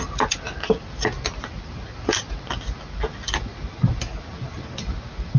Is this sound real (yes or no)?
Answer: yes